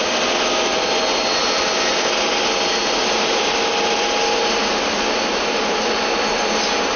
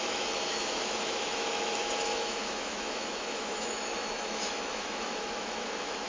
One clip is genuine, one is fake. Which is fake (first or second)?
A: second